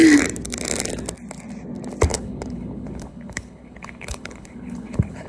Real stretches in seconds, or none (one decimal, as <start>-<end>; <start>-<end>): 0.0-2.1